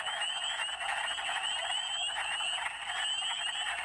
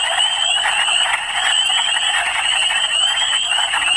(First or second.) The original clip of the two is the first